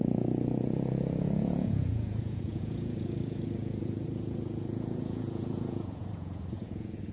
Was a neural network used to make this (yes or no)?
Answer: yes